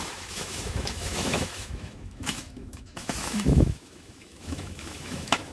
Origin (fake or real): fake